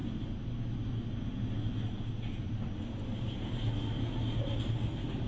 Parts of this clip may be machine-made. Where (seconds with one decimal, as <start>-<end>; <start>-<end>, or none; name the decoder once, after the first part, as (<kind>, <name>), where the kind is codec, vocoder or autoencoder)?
none